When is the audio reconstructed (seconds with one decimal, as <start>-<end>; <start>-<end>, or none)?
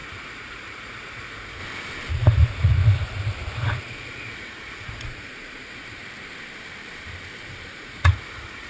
0.0-1.6; 2.1-2.8; 3.8-6.0; 7.8-8.7